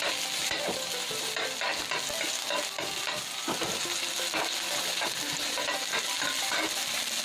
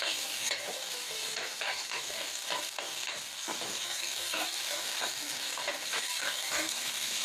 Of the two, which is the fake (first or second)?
second